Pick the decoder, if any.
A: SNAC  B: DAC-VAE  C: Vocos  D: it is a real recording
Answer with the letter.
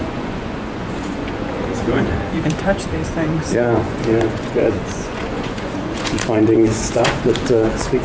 C